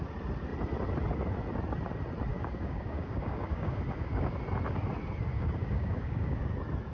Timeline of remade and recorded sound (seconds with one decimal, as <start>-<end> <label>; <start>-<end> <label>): 0.0-2.3 recorded; 2.3-4.4 remade; 4.4-5.3 recorded; 5.3-6.5 remade; 6.5-6.9 recorded